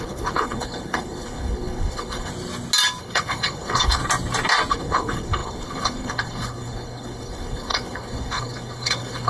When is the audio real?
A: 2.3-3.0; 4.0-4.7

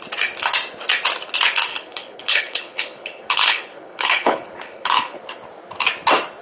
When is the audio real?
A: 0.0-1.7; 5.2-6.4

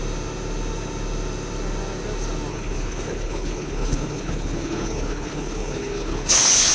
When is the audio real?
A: 0.0-2.5

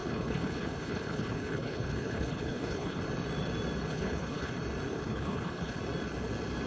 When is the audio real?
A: 3.0-3.9; 4.5-4.9; 5.8-6.7

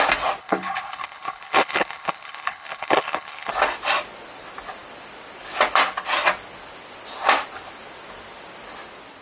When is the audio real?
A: 0.0-0.4; 3.5-9.2

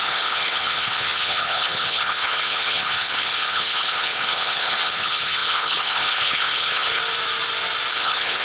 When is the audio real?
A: 7.0-7.9